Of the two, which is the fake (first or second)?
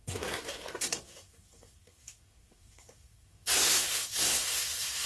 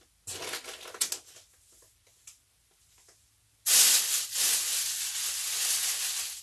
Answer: first